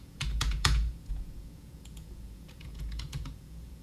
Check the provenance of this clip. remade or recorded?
remade